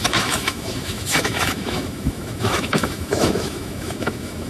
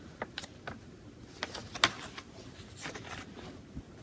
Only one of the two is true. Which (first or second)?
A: second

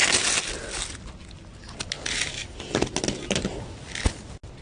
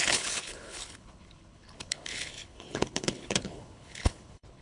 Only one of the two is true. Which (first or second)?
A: first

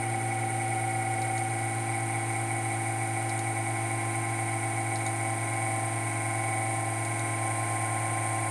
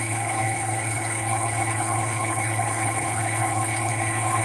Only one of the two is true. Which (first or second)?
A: first